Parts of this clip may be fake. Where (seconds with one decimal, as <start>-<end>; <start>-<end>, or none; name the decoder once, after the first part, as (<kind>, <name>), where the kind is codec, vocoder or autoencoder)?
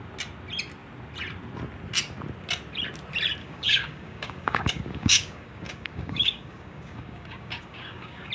3.4-8.3 (codec, DAC)